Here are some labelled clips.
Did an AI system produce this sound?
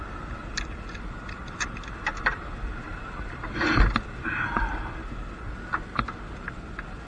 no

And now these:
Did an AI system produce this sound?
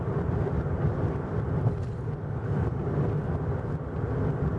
no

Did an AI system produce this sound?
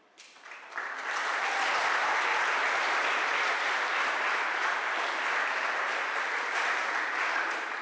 no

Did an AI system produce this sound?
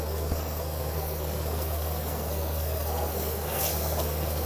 yes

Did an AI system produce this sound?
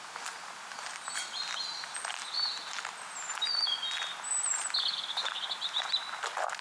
no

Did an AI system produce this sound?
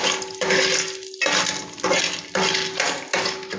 no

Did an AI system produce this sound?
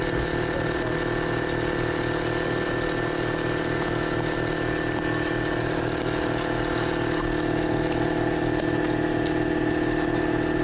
no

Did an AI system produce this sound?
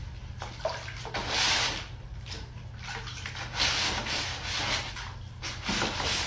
no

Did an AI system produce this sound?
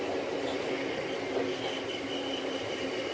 no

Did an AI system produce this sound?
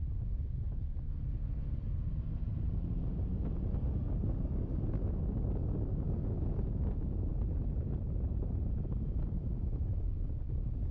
no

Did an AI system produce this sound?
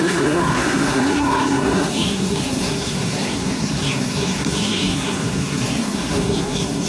yes